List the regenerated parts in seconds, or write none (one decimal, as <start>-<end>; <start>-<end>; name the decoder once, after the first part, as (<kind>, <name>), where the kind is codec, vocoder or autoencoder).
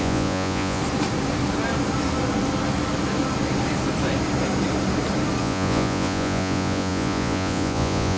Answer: 0.0-0.8 (vocoder, Vocos); 5.4-8.2